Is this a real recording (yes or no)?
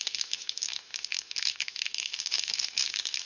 no